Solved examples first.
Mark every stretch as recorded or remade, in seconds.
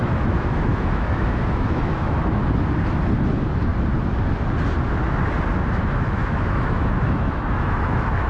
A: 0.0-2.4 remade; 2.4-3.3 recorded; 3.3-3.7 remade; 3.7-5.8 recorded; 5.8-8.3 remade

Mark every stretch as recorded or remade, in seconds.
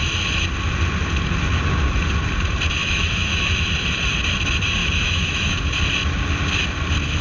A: 0.0-2.8 recorded; 2.8-3.5 remade; 3.5-4.8 recorded; 4.8-5.6 remade; 5.6-7.2 recorded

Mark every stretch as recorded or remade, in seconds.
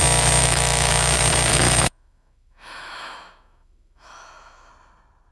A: 0.0-0.4 recorded; 0.4-0.9 remade; 0.9-1.5 recorded; 1.5-4.7 remade; 4.7-5.3 recorded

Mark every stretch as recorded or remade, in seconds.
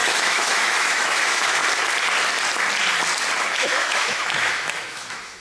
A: 0.0-1.6 remade; 1.6-3.5 recorded; 3.5-5.4 remade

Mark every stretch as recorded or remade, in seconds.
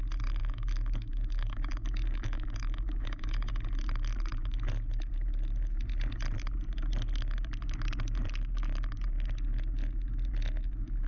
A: 0.0-0.4 recorded; 0.4-3.5 remade; 3.5-11.1 recorded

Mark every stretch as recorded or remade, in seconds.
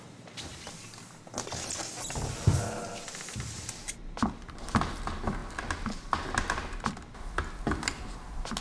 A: 0.0-8.6 recorded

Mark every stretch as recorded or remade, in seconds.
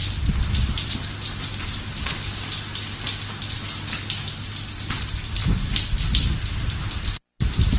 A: 0.0-7.8 recorded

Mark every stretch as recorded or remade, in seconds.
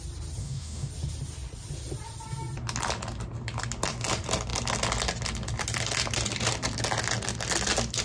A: 0.0-0.4 recorded; 0.4-0.9 remade; 0.9-8.0 recorded